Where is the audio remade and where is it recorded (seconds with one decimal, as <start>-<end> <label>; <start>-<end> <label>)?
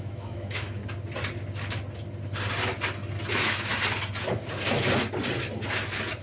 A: 0.0-0.8 remade; 0.8-3.3 recorded; 3.3-3.7 remade; 3.7-6.2 recorded